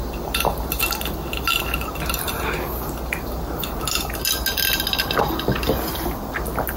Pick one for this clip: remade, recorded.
recorded